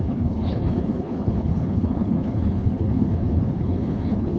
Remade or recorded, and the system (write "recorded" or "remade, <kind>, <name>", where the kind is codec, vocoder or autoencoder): remade, codec, HILCodec